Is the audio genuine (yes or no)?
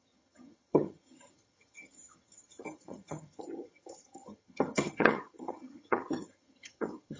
no